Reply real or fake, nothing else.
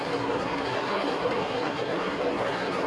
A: fake